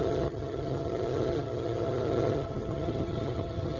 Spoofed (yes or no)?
yes